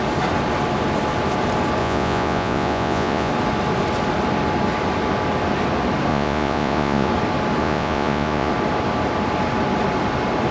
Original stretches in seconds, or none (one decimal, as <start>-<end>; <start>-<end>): 0.0-1.8; 3.3-6.1; 7.1-7.6; 8.5-10.5

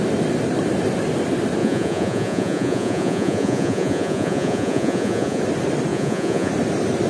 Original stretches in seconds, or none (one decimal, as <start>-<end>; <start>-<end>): 0.0-1.6; 5.4-5.9; 6.5-7.1

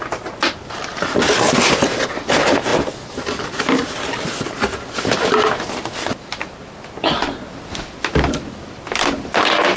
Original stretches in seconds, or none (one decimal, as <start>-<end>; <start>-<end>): 0.0-9.8

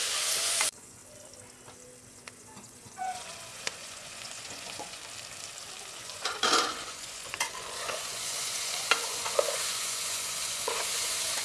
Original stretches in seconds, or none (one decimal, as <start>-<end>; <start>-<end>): 1.0-2.1; 5.0-5.9

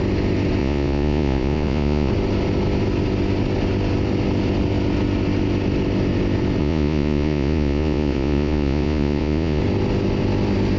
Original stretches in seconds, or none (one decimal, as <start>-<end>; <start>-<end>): 0.0-0.6; 2.1-6.6; 9.6-10.8

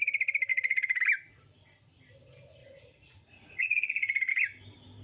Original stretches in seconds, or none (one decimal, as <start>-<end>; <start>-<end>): 0.0-0.5; 1.0-2.6; 4.3-5.0